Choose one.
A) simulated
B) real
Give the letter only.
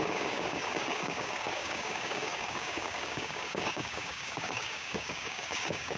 A